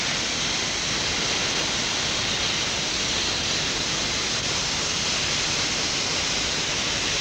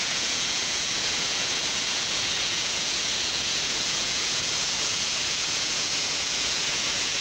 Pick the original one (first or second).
first